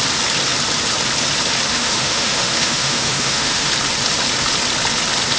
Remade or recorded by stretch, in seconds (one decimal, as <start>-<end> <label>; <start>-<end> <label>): 0.0-1.7 recorded; 1.7-3.7 remade; 3.7-5.4 recorded